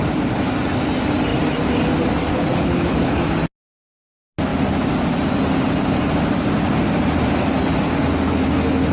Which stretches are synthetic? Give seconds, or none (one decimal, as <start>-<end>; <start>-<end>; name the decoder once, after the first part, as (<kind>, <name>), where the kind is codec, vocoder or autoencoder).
2.3-3.2 (codec, HILCodec)